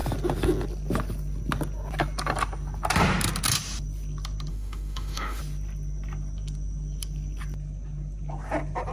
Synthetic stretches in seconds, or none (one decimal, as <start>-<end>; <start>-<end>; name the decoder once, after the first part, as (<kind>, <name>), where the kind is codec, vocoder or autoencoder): 4.5-5.4 (autoencoder, DAC-VAE)